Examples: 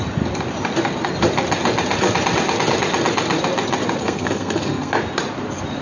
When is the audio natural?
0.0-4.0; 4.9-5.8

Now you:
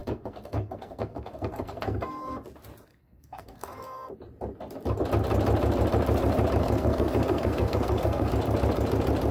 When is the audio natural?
2.1-2.9; 4.1-6.6; 8.3-9.3

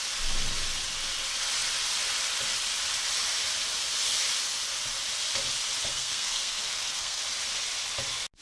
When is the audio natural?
0.0-5.9; 7.2-8.4

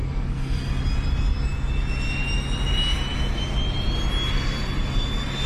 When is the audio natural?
0.8-5.5